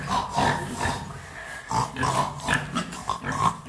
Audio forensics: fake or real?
real